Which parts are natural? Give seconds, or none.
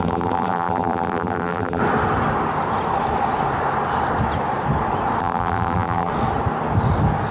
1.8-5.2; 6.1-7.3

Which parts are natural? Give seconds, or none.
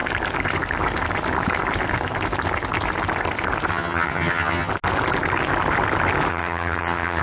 0.0-3.7; 4.7-6.3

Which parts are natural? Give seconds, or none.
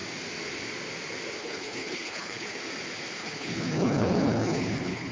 0.0-1.4; 2.6-3.2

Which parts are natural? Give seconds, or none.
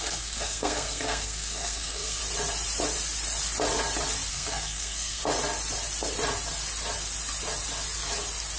2.2-4.3; 5.2-8.6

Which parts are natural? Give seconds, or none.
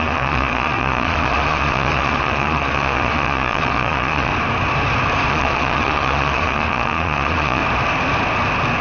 4.3-5.3; 7.6-8.8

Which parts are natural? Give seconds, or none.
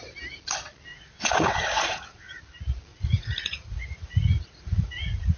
0.0-0.9; 2.4-2.9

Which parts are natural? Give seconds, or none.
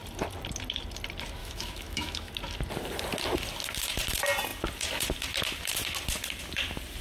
0.0-1.4; 2.3-7.0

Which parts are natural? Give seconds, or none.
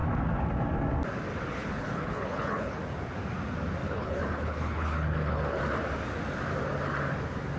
0.0-1.5; 2.8-3.8; 5.6-7.6